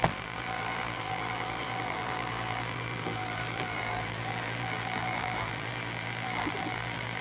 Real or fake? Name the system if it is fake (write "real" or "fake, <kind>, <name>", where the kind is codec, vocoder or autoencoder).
fake, vocoder, BigVGAN v2